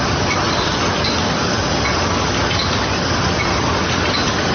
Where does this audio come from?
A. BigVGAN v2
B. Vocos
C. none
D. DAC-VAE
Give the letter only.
C